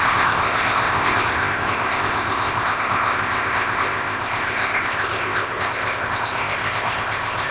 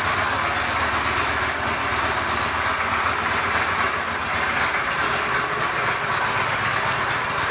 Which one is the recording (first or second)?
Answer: second